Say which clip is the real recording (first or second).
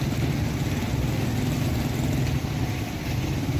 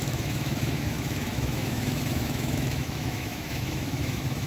first